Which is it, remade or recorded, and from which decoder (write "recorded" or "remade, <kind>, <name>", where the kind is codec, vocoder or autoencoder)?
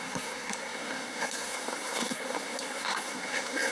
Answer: remade, codec, SNAC